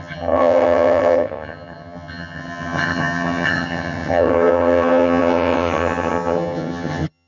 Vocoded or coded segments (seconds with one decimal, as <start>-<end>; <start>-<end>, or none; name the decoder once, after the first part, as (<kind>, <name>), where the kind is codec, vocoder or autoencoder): 0.0-7.3 (vocoder, HiFi-GAN)